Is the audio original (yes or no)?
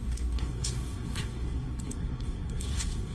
no